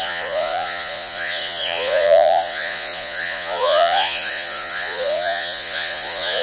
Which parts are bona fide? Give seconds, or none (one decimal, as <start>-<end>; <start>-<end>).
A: none